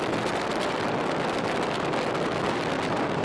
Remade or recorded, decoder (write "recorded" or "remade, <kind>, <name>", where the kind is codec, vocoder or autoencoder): recorded